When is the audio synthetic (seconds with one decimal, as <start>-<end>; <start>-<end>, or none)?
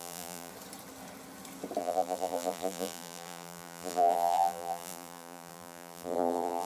0.0-0.5; 1.8-6.7